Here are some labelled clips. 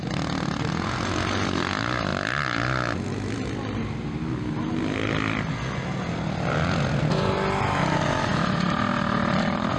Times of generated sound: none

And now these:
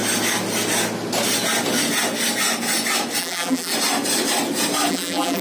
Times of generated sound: 3.2-3.7 (vocoder, BigVGAN v2); 4.9-5.4